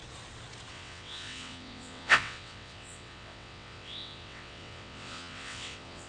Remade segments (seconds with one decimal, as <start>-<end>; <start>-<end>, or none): 0.7-6.1